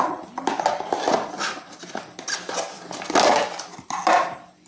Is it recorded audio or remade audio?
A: recorded